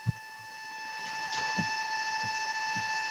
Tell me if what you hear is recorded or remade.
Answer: recorded